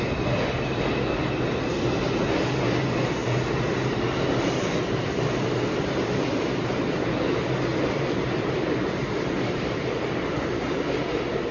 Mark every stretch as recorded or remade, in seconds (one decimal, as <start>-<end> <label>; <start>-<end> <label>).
0.0-3.2 recorded; 3.2-5.3 remade; 5.3-7.7 recorded; 7.7-10.5 remade; 10.5-11.5 recorded